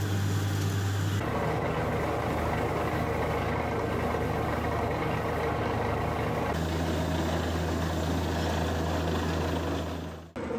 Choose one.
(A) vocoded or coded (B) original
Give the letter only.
B